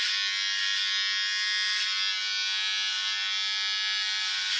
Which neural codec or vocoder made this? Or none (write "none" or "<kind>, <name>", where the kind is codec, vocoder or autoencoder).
none